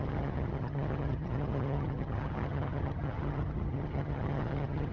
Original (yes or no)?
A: no